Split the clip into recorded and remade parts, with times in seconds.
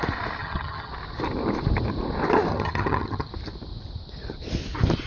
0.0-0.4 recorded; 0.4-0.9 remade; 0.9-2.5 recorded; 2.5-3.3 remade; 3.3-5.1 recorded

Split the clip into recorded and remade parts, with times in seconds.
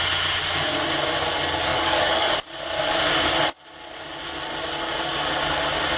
0.0-1.7 recorded; 1.7-2.3 remade; 2.3-6.0 recorded